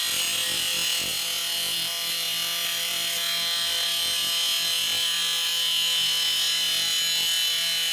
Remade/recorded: recorded